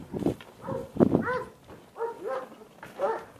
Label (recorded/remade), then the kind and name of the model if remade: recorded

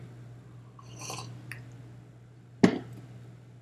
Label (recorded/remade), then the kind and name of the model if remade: recorded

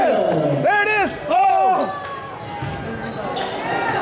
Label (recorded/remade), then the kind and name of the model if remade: recorded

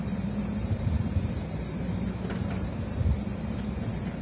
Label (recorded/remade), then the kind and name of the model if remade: remade, vocoder, BigVGAN v2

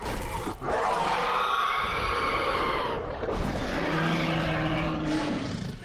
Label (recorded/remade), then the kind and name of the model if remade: remade, vocoder, BigVGAN v2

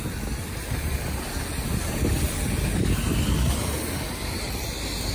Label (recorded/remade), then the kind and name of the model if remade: recorded